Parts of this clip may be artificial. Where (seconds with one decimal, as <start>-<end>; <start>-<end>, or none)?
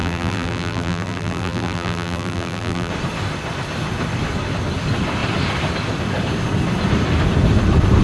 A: 0.0-2.9